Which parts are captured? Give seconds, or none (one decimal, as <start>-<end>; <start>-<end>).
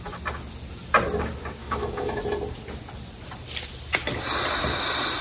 0.0-1.6; 2.2-5.2